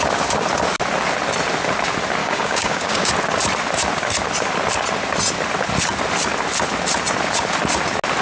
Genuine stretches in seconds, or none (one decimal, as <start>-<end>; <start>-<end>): 0.0-2.2; 3.1-8.2